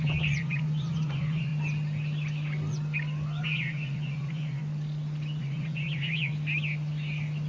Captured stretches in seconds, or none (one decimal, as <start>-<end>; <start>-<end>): 1.5-3.4; 4.6-5.4; 6.3-7.5